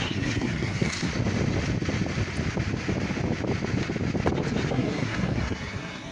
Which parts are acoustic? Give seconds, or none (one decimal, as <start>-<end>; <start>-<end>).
1.1-4.7